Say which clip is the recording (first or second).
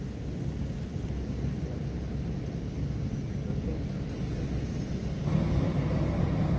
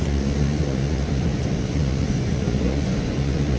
first